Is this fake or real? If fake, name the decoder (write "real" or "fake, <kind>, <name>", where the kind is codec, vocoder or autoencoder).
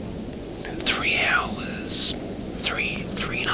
fake, vocoder, Vocos